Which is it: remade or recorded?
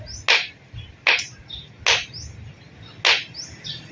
recorded